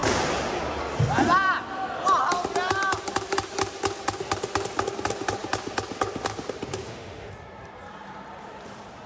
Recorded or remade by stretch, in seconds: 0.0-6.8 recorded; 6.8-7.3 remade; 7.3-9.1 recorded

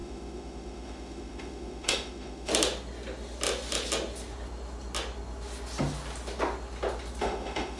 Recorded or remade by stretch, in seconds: 0.0-2.5 remade; 2.5-7.2 recorded; 7.2-7.8 remade

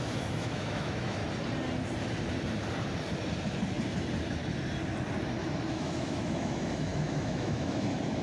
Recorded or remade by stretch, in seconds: 0.0-1.2 remade; 1.2-5.7 recorded; 5.7-8.2 remade

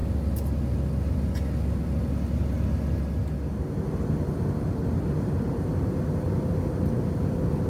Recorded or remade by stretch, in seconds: 0.0-7.7 recorded

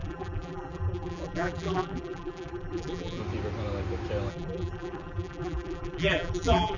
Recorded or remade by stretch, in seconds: 0.0-3.2 remade; 3.2-4.3 recorded; 4.3-6.8 remade

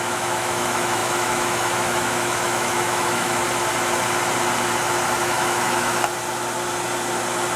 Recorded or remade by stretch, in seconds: 0.0-3.4 remade; 3.4-5.2 recorded; 5.2-5.9 remade; 5.9-7.6 recorded

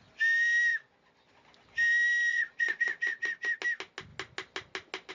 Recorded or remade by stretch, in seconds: 0.0-2.3 recorded; 2.3-3.6 remade; 3.6-5.1 recorded

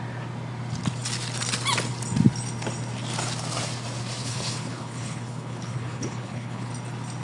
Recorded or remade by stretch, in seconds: 0.0-4.2 recorded; 4.2-6.7 remade; 6.7-7.2 recorded